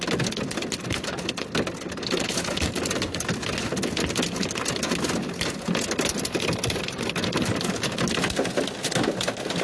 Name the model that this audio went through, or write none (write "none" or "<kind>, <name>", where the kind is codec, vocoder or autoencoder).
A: none